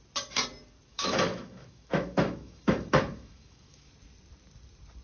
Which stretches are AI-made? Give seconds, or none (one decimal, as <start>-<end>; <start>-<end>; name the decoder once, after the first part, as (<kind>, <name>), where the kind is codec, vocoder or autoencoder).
0.9-3.9 (autoencoder, DAC-VAE)

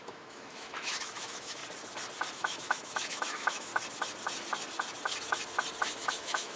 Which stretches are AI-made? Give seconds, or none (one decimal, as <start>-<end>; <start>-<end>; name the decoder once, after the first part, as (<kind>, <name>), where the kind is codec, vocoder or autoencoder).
0.0-1.6 (autoencoder, DAC-VAE); 2.3-3.7; 5.8-6.6

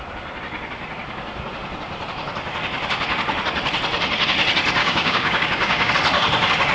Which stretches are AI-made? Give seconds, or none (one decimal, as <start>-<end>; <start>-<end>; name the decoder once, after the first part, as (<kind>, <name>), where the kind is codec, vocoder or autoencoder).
4.8-5.9 (codec, DAC)